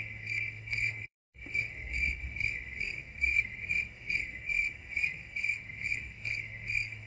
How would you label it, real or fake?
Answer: fake